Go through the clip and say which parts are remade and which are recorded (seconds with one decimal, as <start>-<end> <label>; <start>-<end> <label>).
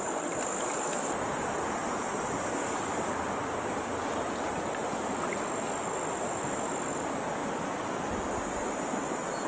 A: 0.0-7.4 recorded; 7.4-8.4 remade; 8.4-9.5 recorded